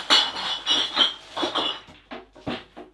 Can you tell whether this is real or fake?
real